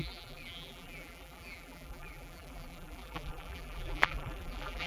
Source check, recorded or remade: remade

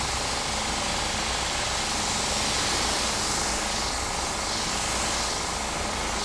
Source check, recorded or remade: recorded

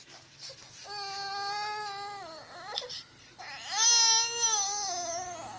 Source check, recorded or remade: recorded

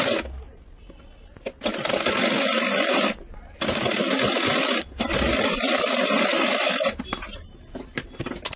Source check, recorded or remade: recorded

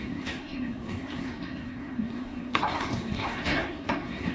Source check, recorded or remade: remade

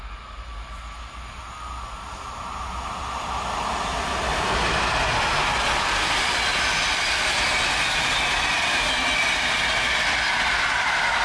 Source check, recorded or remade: recorded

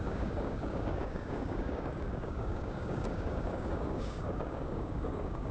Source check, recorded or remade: remade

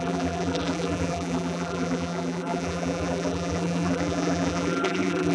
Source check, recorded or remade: remade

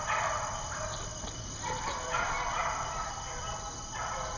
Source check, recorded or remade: recorded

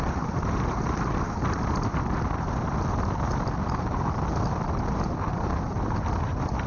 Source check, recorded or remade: recorded